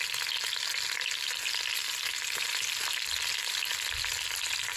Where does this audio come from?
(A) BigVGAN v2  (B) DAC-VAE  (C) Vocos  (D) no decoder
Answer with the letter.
D